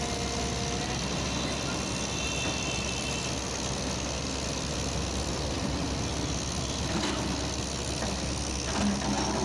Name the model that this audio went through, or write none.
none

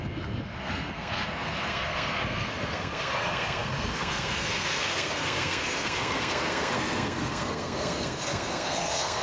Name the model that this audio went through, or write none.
codec, SNAC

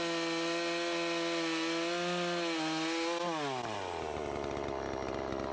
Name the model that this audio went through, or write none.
none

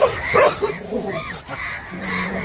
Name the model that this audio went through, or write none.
vocoder, BigVGAN v2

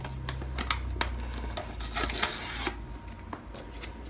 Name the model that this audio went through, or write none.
none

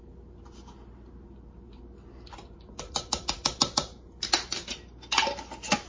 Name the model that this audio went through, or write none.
none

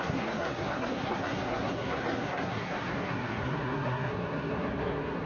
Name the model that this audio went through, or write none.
codec, SNAC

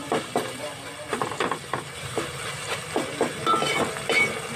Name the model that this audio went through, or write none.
none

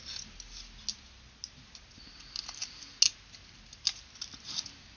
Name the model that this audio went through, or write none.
none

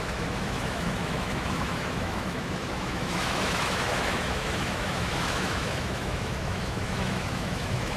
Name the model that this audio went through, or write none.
autoencoder, DAC-VAE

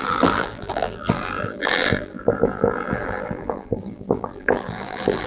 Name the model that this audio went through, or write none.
vocoder, BigVGAN v2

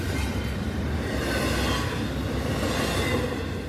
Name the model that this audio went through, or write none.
none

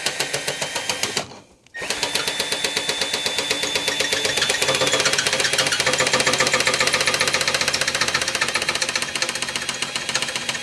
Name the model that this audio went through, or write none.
none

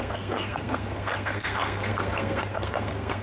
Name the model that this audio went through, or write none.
codec, SNAC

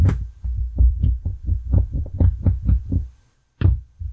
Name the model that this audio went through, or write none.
vocoder, BigVGAN v2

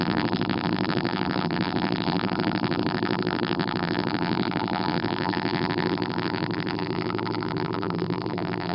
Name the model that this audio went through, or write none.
vocoder, BigVGAN v2